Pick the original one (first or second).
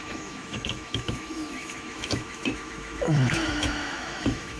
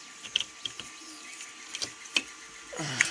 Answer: second